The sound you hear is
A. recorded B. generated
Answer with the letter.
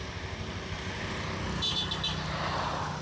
A